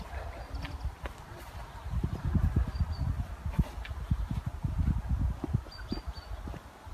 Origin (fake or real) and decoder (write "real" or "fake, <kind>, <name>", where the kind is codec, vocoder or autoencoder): real